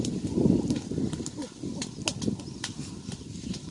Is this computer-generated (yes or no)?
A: no